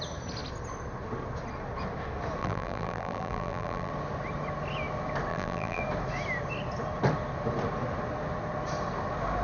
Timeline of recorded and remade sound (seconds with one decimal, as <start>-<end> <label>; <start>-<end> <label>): 0.0-2.4 recorded; 2.4-3.9 remade; 3.9-5.3 recorded; 5.3-5.8 remade; 5.8-9.4 recorded